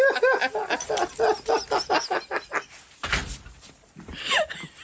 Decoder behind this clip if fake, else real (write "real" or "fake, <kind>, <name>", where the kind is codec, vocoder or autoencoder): real